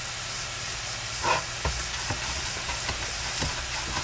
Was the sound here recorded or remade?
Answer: recorded